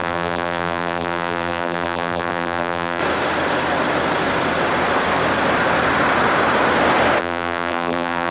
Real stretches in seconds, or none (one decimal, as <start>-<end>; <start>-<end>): 3.0-7.2